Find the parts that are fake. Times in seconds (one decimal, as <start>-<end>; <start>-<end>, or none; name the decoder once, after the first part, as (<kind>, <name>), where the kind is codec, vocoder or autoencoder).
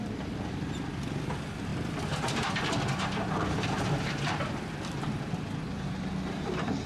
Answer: none